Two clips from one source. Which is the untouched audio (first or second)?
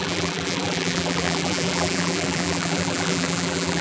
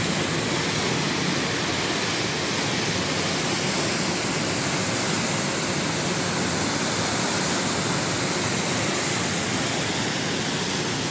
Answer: second